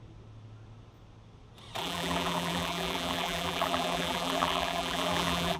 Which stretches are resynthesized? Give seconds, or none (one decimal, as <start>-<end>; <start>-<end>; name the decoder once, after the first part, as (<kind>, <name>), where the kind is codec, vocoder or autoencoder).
1.8-5.6 (vocoder, BigVGAN v2)